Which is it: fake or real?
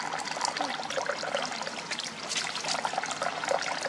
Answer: real